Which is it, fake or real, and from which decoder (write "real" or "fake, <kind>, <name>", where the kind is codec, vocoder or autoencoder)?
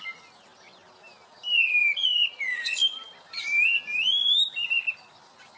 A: real